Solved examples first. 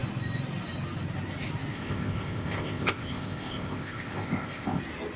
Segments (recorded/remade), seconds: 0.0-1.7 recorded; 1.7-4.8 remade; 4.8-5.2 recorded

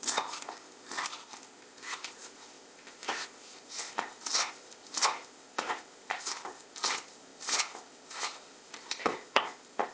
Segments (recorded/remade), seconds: 0.0-9.9 remade

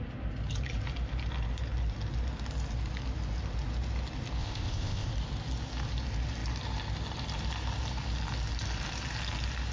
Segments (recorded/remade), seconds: 0.0-4.4 recorded; 4.4-5.1 remade; 5.1-9.7 recorded